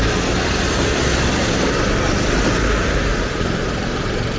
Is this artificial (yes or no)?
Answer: no